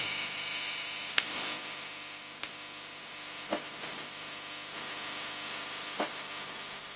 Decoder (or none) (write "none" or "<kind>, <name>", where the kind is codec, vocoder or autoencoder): none